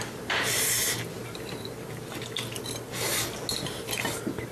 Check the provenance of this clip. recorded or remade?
recorded